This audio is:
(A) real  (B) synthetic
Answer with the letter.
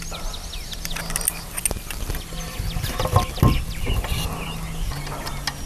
A